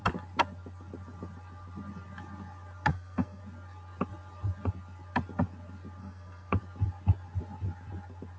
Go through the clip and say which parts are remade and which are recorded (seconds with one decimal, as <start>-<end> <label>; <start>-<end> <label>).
0.0-2.9 recorded; 2.9-3.4 remade; 3.4-6.0 recorded; 6.0-6.5 remade; 6.5-8.4 recorded